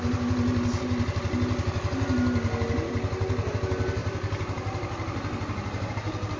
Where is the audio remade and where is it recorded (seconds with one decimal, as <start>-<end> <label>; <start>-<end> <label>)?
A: 0.0-6.4 recorded